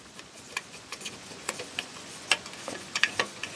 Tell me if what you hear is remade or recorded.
remade